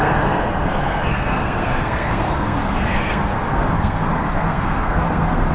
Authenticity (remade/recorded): remade